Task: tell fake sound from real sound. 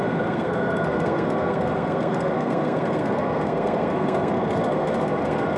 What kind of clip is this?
fake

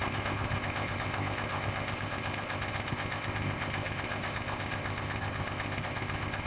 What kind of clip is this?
fake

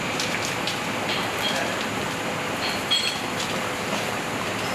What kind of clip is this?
real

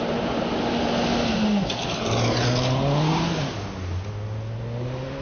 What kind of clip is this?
real